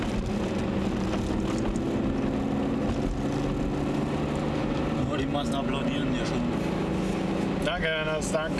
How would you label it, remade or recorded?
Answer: recorded